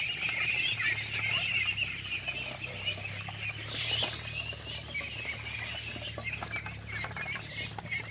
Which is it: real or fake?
real